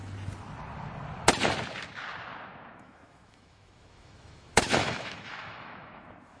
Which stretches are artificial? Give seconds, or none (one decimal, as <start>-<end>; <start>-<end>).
2.8-6.4